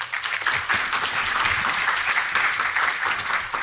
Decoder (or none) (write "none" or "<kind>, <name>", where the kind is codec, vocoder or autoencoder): none